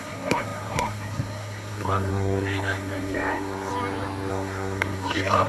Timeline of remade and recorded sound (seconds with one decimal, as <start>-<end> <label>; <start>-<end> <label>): 0.0-3.7 remade; 3.7-4.3 recorded; 4.3-5.5 remade

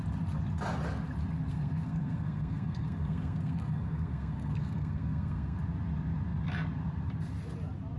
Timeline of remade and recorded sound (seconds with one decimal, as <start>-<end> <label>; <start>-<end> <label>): 0.0-1.5 recorded; 1.5-5.6 remade; 5.6-8.0 recorded

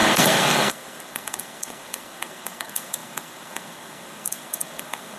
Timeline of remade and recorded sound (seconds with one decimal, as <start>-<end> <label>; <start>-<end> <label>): 0.0-5.2 remade

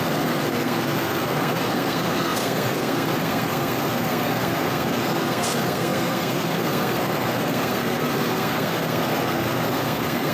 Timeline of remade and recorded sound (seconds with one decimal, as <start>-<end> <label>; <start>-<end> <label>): 0.0-10.3 remade

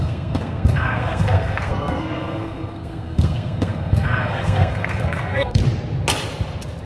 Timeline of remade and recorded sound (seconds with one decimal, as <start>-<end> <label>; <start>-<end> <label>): 0.0-5.6 remade; 5.6-6.9 recorded

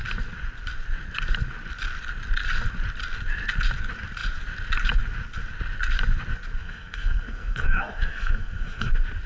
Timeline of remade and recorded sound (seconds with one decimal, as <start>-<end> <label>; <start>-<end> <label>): 0.0-6.6 recorded; 6.6-8.9 remade; 8.9-9.3 recorded